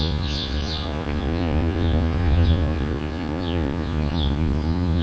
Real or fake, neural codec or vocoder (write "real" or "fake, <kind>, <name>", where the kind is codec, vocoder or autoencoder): fake, vocoder, Vocos